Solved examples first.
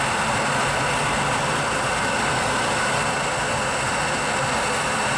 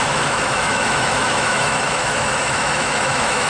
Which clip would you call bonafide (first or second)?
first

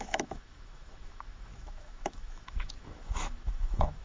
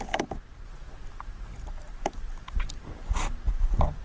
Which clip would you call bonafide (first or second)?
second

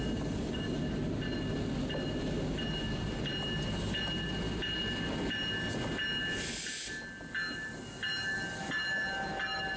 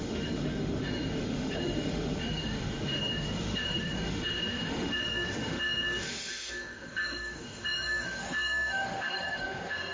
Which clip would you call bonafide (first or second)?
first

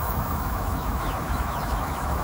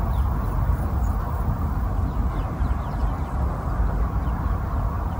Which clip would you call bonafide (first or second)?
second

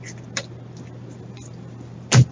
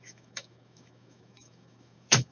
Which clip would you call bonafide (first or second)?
first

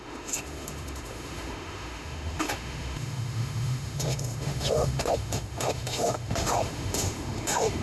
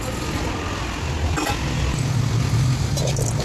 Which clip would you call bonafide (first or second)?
second